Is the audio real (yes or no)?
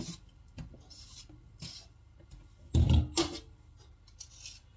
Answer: yes